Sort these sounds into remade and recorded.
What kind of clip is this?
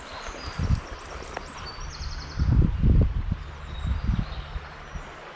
recorded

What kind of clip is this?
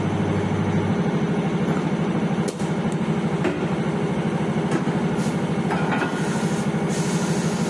recorded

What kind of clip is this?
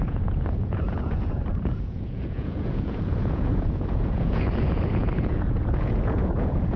remade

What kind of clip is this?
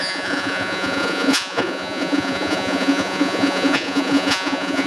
remade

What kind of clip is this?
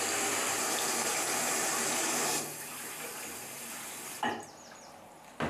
recorded